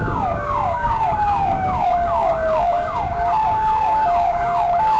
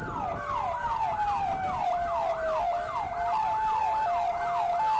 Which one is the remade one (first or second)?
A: first